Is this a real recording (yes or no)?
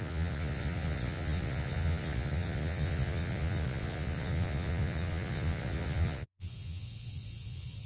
no